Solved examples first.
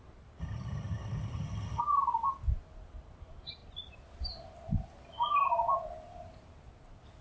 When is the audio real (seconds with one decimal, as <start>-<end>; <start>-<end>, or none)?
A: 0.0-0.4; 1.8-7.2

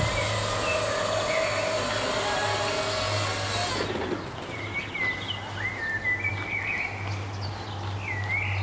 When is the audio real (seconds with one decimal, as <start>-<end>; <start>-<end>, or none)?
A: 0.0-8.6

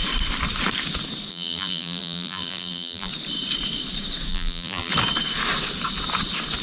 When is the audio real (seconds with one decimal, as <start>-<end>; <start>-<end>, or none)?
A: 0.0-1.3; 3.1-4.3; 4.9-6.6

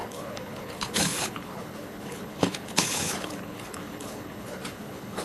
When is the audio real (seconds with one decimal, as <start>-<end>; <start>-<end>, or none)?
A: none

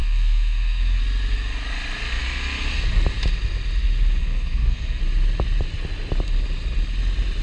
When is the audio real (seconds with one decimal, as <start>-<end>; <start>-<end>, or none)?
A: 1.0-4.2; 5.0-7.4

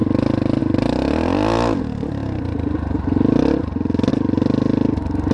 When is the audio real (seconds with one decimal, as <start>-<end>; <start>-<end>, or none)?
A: 0.0-5.3

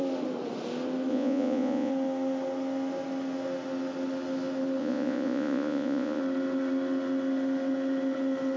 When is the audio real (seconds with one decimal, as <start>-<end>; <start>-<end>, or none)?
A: 0.0-1.1; 1.9-4.8; 6.2-8.6